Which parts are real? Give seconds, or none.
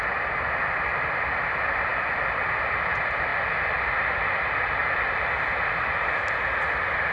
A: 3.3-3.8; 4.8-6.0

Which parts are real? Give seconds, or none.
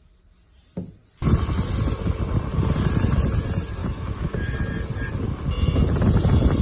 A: 0.0-3.8; 4.5-6.6